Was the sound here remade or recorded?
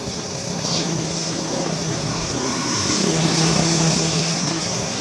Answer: remade